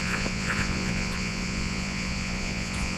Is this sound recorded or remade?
remade